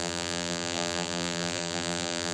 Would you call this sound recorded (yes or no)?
no